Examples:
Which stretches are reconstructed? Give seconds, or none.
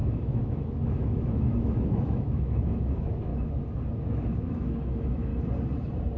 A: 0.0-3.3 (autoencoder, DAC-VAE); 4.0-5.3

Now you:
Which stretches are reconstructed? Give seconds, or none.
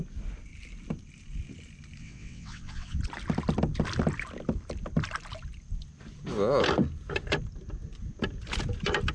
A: 2.0-3.0 (vocoder, WaveNeXt)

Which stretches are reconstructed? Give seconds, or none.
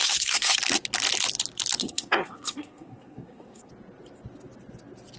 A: 0.0-0.6 (codec, SNAC); 1.8-3.7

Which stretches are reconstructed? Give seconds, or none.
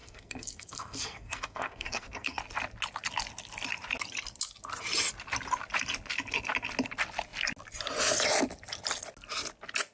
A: 0.0-2.4 (codec, SNAC)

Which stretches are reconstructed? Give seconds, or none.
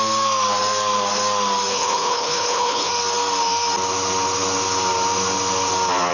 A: 1.7-2.9 (codec, HILCodec)